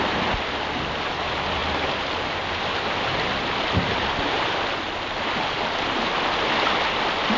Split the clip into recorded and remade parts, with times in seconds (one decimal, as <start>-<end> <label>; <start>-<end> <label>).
0.0-7.4 recorded